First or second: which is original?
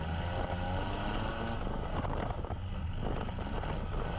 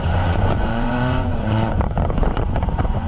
first